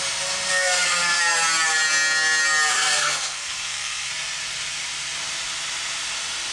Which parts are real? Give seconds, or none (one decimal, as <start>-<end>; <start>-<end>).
0.0-0.5; 1.2-2.7; 4.1-6.5

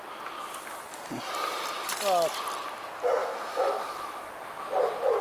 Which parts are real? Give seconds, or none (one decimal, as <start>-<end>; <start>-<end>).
0.0-3.2; 4.3-5.2

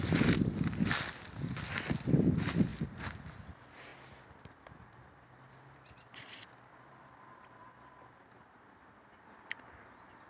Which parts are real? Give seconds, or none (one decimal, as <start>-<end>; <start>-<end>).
0.0-3.9; 7.8-10.3

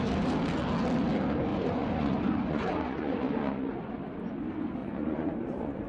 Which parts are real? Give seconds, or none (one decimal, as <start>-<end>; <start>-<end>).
0.0-1.5; 3.8-4.8

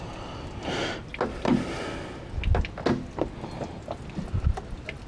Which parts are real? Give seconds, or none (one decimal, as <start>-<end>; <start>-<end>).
0.0-5.1

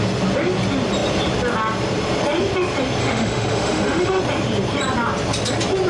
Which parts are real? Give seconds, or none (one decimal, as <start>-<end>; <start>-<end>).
0.0-3.0; 4.2-5.9

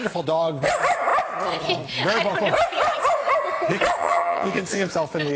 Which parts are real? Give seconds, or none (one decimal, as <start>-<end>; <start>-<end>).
0.0-4.0; 4.9-5.4